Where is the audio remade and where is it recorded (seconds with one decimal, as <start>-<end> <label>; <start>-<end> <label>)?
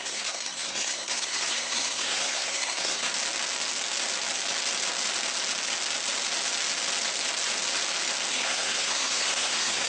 0.0-3.1 remade; 3.1-8.3 recorded; 8.3-9.9 remade